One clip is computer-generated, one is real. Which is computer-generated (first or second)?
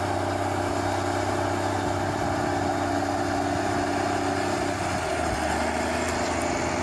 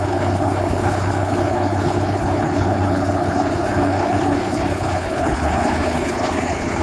second